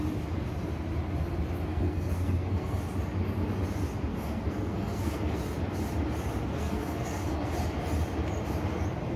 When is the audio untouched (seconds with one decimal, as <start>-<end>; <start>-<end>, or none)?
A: 0.0-1.7; 2.8-4.1; 5.4-6.5; 7.5-9.2

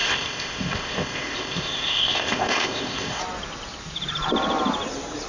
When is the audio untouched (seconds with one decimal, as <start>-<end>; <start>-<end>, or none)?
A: 3.2-5.3

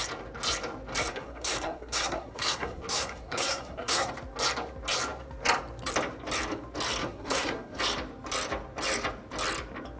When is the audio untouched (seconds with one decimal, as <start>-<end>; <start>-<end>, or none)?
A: 0.0-1.1; 4.1-7.0; 7.8-10.0

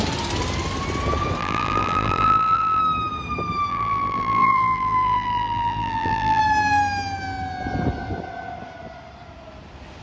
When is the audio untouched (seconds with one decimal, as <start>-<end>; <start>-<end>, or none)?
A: 0.0-1.4; 2.8-3.7; 6.4-10.0

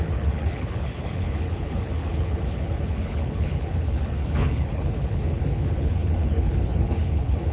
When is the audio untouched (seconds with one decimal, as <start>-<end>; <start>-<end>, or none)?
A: none